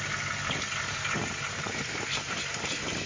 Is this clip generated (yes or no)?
no